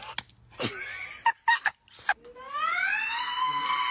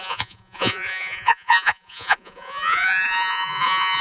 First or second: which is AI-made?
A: second